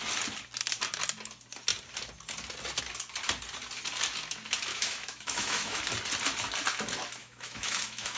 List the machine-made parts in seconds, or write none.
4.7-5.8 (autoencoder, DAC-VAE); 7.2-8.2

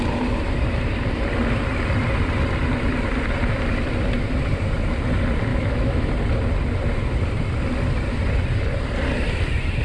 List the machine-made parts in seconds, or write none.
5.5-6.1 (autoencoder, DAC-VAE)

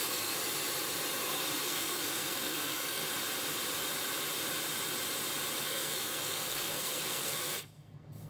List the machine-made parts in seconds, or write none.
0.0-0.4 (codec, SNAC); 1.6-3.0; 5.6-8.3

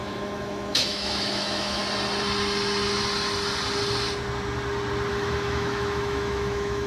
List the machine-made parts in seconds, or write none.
0.0-1.8 (autoencoder, DAC-VAE); 5.1-6.9

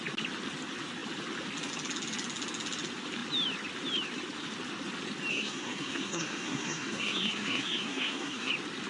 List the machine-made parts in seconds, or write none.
5.3-8.5 (codec, SNAC)

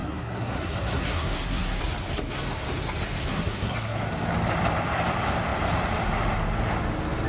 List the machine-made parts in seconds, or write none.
0.0-1.8 (codec, SNAC); 3.3-4.0